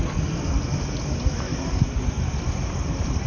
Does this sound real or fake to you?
real